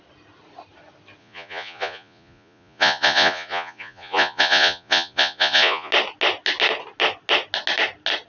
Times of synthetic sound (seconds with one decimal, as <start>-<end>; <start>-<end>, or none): 1.2-5.9